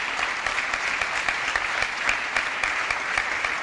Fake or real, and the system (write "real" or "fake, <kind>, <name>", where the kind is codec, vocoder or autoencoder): real